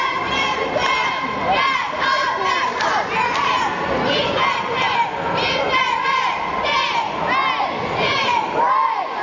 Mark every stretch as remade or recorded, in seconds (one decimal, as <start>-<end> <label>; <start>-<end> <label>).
0.0-9.2 recorded